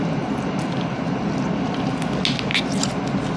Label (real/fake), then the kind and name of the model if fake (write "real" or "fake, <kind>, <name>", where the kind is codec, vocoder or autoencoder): real